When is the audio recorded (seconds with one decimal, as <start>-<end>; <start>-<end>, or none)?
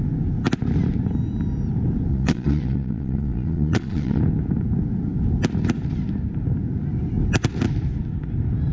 0.0-2.1; 4.2-8.7